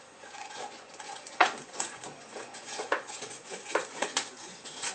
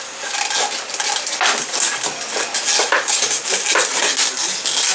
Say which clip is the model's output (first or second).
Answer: first